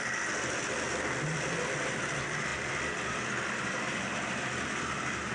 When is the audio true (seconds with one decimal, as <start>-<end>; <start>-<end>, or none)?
0.0-5.3